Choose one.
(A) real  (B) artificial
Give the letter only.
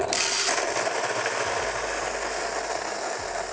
A